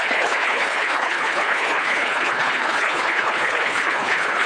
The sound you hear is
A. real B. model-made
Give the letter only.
B